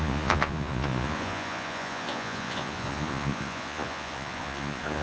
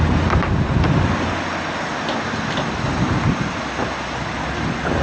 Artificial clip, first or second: first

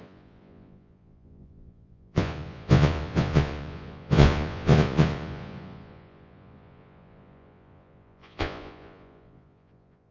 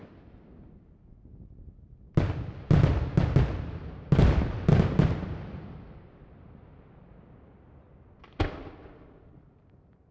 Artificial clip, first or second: first